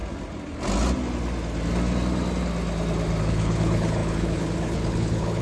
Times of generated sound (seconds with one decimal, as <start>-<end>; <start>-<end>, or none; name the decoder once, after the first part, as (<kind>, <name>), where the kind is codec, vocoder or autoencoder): 3.2-5.4 (codec, HILCodec)